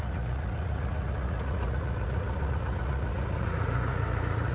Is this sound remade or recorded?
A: remade